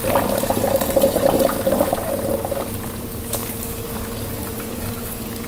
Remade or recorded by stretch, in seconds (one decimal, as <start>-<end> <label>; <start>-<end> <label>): 0.0-3.0 recorded; 3.0-5.5 remade